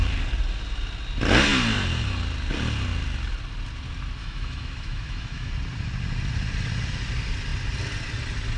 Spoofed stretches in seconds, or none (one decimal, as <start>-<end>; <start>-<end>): 4.2-5.5